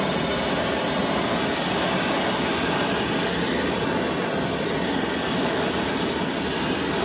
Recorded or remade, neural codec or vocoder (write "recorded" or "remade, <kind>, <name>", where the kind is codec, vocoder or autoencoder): recorded